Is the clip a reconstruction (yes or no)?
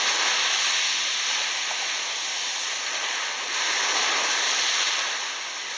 no